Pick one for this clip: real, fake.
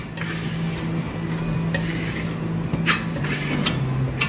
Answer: real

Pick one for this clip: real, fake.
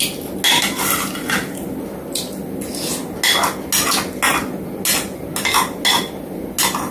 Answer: real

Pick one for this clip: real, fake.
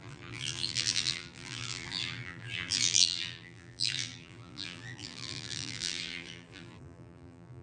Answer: fake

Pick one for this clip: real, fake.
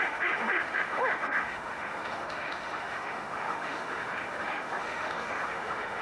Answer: fake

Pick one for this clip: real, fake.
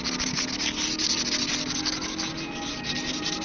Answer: real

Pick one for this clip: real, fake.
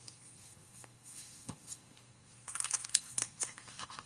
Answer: fake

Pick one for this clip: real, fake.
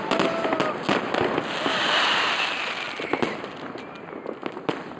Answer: real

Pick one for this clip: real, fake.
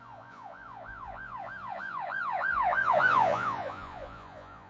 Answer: fake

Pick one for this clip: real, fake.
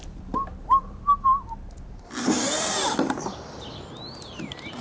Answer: fake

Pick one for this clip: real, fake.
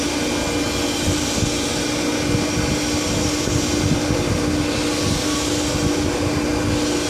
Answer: real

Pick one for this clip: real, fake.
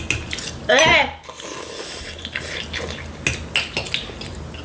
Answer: real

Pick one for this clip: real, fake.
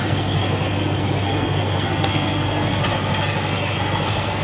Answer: fake